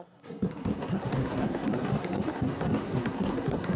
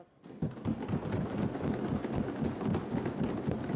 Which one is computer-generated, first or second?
first